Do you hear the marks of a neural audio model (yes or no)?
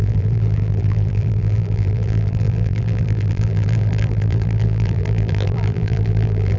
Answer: yes